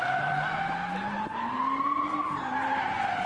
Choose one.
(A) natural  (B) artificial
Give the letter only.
B